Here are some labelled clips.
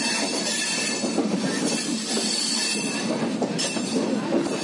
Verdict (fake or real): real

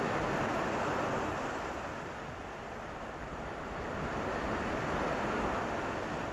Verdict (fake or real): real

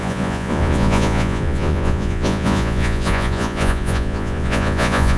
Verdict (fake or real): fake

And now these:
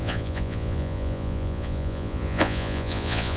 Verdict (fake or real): fake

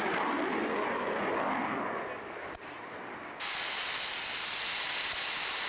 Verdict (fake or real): real